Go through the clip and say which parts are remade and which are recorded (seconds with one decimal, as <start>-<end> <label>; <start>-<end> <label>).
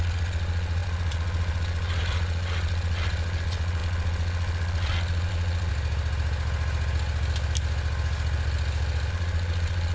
0.0-5.7 remade; 5.7-9.1 recorded; 9.1-9.9 remade